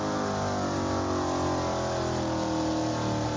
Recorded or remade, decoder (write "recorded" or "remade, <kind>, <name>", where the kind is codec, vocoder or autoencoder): recorded